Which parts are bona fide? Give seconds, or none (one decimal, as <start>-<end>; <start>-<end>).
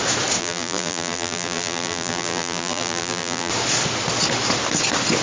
0.0-0.4; 3.5-5.2